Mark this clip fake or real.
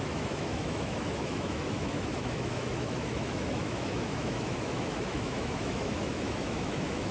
fake